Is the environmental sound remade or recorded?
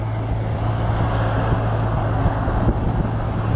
recorded